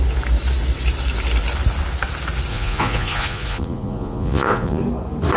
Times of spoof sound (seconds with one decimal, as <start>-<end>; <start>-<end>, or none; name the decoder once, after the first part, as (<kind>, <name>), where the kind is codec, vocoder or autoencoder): 2.5-4.8 (vocoder, Vocos)